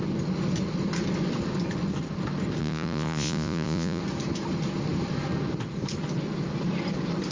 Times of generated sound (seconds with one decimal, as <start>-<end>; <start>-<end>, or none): 2.6-4.0